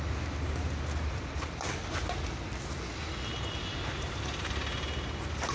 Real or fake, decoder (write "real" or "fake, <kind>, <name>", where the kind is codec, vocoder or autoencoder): real